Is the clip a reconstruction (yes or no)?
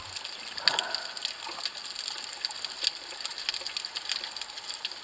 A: no